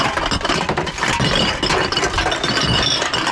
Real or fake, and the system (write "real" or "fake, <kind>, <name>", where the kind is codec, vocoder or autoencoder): real